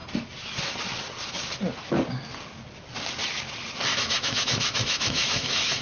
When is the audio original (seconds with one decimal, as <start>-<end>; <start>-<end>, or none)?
0.0-3.9